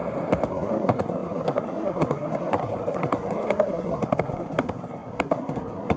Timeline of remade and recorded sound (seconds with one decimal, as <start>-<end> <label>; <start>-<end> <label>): 0.0-0.5 recorded; 0.5-6.0 remade